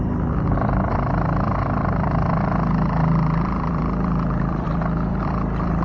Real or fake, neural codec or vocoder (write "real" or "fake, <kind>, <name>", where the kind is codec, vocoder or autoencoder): fake, vocoder, BigVGAN v2